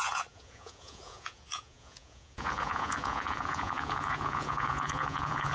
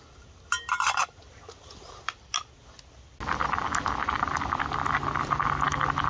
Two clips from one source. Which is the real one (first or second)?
second